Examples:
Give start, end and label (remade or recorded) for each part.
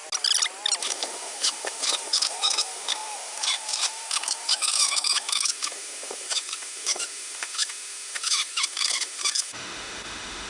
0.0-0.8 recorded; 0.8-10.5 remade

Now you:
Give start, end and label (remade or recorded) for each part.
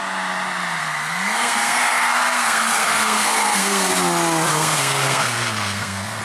0.0-0.8 recorded; 0.8-3.9 remade; 3.9-4.5 recorded; 4.5-6.2 remade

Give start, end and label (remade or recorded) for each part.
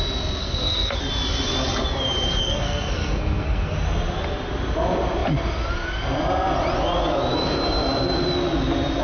0.0-0.4 recorded; 0.4-1.0 remade; 1.0-2.4 recorded; 2.4-3.7 remade; 3.7-9.0 recorded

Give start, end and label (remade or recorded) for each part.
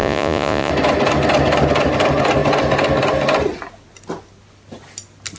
0.0-0.7 remade; 0.7-5.4 recorded